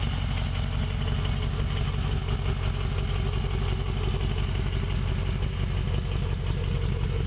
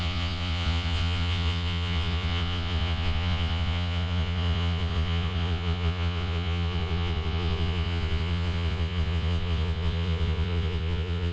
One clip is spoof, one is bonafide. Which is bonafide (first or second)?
first